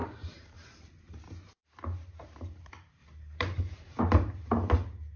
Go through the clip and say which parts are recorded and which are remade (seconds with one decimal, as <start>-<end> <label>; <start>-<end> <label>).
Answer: 0.0-2.6 remade; 2.6-3.0 recorded; 3.0-4.0 remade; 4.0-5.2 recorded